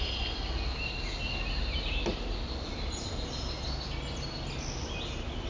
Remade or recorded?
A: recorded